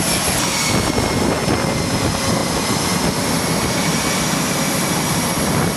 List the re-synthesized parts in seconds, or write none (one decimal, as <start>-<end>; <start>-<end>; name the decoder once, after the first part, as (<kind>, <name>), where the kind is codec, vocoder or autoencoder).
none